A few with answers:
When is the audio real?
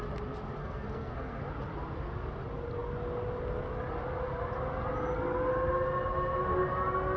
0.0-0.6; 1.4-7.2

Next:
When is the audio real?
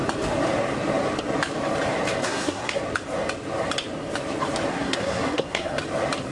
0.0-2.2; 2.8-4.7; 5.8-6.3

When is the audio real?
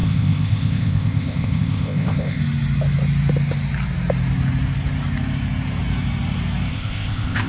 2.4-6.7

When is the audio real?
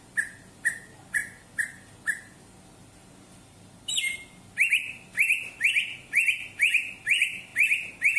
0.0-8.2